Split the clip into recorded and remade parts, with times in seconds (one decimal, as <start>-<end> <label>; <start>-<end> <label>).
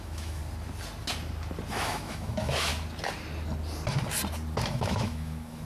0.0-0.4 remade; 0.4-1.7 recorded; 1.7-2.7 remade; 2.7-4.7 recorded; 4.7-5.7 remade